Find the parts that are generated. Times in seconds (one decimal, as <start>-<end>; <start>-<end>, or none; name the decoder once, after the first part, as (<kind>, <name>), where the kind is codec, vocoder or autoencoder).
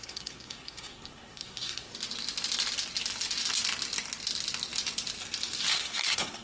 0.0-1.9 (codec, SNAC); 5.7-6.4